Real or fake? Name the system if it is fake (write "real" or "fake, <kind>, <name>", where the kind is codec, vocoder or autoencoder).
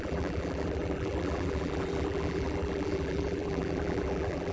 fake, vocoder, BigVGAN v2